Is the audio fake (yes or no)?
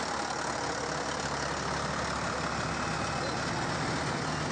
no